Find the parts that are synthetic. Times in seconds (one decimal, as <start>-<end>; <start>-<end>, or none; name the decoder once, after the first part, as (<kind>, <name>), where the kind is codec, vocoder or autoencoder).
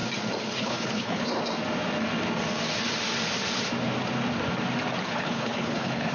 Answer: 0.6-1.3 (codec, HILCodec); 5.0-6.1